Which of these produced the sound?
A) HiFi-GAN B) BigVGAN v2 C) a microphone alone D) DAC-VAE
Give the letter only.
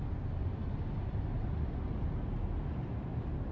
C